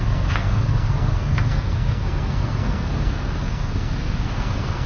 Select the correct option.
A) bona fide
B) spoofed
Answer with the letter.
B